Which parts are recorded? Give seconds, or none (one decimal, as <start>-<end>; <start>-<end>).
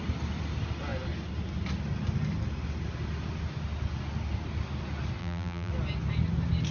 0.0-5.2; 5.7-6.7